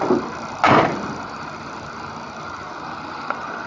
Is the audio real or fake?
real